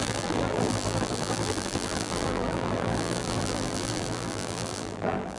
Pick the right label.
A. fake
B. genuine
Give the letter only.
A